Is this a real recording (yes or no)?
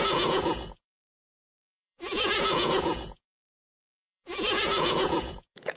no